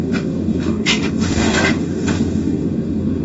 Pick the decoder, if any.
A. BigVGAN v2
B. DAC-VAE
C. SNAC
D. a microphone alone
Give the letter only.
B